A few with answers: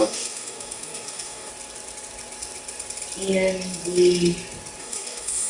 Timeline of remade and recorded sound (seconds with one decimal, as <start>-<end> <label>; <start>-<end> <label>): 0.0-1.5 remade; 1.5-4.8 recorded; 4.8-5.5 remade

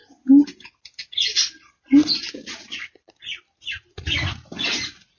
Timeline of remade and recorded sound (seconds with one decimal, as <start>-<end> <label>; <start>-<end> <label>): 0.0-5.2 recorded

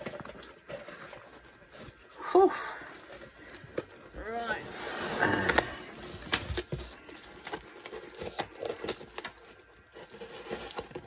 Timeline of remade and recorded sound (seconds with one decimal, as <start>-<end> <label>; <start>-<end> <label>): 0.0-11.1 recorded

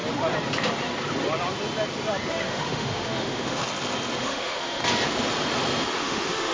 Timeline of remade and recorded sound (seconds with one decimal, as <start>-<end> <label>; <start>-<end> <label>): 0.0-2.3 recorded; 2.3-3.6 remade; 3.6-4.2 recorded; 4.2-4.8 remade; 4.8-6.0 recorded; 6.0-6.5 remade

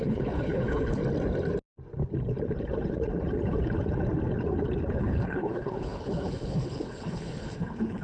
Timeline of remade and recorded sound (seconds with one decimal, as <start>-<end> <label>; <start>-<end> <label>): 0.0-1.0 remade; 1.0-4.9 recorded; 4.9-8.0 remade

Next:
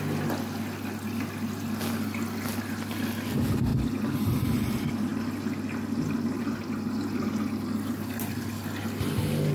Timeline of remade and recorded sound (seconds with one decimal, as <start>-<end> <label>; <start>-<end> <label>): 0.0-9.5 recorded

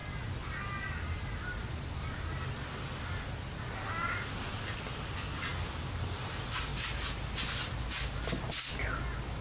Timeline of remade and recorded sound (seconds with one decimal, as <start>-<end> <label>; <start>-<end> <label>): 0.0-9.4 recorded